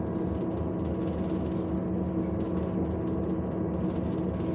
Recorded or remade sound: recorded